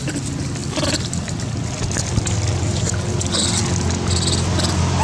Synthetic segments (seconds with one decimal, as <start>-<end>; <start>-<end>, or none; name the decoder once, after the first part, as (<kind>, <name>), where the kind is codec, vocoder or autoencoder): none